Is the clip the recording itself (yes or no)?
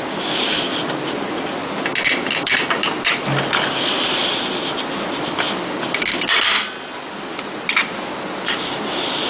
yes